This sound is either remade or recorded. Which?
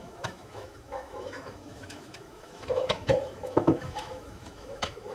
remade